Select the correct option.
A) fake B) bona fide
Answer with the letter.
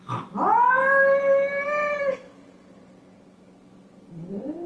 B